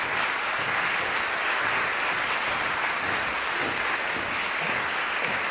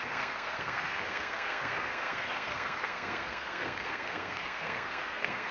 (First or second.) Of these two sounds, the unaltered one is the first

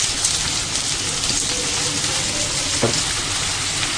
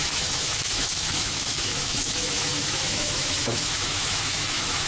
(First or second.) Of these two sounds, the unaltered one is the first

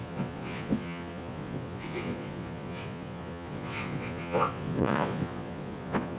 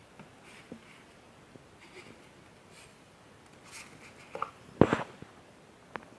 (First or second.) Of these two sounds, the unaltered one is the second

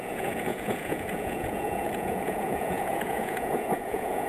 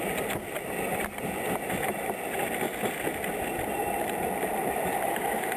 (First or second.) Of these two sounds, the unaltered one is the second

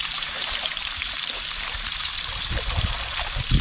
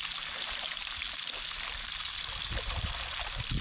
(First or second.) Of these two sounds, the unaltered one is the second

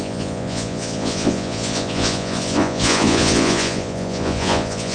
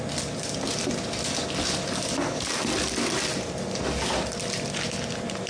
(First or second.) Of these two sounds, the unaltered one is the second